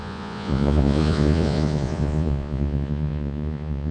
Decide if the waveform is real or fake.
fake